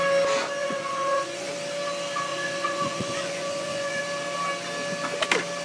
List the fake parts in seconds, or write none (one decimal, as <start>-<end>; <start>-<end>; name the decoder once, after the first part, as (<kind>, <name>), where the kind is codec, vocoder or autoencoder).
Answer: 0.6-1.5 (vocoder, Vocos); 2.3-4.0